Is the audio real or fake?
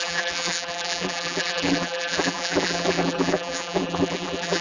fake